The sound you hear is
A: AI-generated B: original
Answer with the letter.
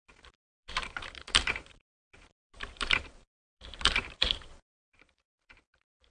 A